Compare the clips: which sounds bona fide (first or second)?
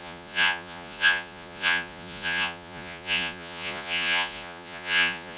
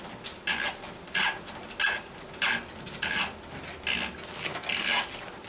second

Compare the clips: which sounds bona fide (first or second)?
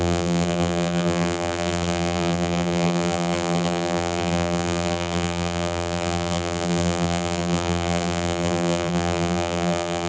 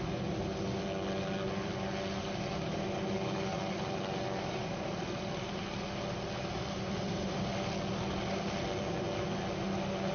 second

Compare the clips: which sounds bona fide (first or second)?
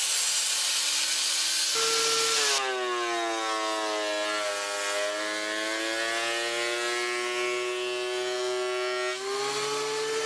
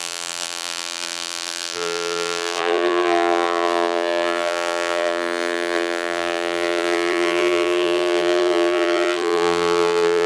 first